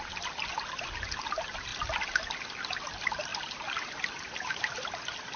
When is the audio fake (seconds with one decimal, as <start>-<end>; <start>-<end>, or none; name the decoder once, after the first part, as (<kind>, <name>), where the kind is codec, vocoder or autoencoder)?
none